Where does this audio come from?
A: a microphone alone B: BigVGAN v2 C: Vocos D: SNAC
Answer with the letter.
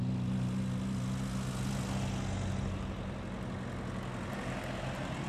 A